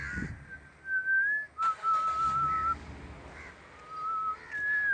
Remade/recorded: recorded